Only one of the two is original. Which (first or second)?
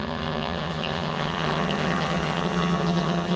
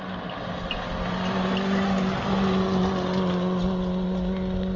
second